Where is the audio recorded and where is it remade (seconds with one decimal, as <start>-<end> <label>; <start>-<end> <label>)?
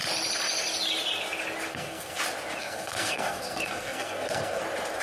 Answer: 0.0-1.7 recorded; 1.7-2.2 remade; 2.2-2.6 recorded; 2.6-4.6 remade; 4.6-5.0 recorded